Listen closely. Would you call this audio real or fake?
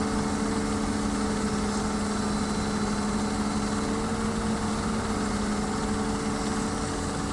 real